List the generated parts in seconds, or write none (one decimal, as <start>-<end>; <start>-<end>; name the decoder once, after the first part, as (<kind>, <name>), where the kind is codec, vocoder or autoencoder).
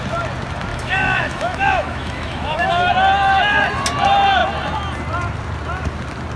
0.7-2.9 (autoencoder, DAC-VAE)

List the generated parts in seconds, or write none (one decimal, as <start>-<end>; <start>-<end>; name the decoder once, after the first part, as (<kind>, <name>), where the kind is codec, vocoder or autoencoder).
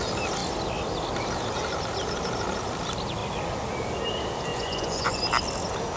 4.5-5.2 (vocoder, Vocos)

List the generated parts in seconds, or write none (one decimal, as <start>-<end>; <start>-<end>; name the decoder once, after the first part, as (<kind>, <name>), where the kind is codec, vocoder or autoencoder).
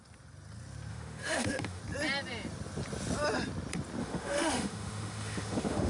0.9-1.8 (autoencoder, DAC-VAE); 4.0-5.9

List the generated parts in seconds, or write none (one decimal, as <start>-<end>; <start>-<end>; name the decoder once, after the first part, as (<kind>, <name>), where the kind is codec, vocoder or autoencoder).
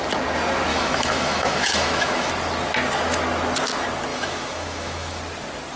0.7-2.3 (autoencoder, DAC-VAE); 4.1-5.2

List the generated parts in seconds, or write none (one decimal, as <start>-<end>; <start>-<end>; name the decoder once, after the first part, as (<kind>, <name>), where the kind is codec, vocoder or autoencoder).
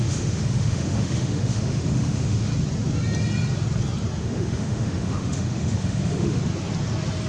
0.0-2.5 (autoencoder, DAC-VAE); 4.2-6.4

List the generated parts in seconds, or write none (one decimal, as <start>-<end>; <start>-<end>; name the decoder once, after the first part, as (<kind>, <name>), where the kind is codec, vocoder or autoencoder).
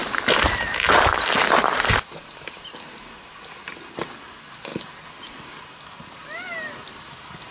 none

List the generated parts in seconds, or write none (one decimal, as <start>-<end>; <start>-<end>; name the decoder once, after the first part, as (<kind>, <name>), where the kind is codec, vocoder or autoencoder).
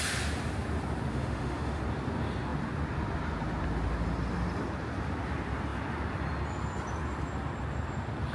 1.1-1.8 (autoencoder, DAC-VAE)